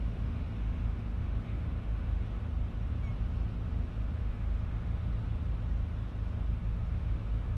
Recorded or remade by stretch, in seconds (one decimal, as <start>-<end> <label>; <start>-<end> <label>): 0.0-2.4 remade; 2.4-4.2 recorded; 4.2-5.0 remade; 5.0-6.6 recorded; 6.6-7.6 remade